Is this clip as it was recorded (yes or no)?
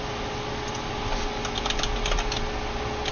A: yes